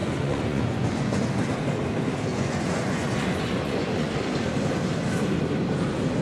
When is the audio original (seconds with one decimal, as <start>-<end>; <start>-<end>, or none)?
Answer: 1.2-2.3; 4.1-6.2